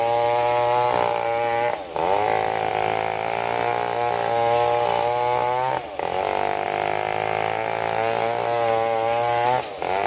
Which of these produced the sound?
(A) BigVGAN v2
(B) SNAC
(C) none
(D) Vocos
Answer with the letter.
C